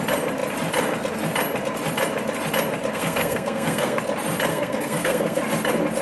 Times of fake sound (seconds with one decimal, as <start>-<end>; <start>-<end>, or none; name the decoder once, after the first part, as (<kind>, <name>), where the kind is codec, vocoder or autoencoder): 2.9-4.0 (codec, SNAC); 4.5-5.4